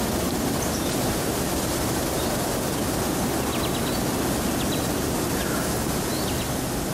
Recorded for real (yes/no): yes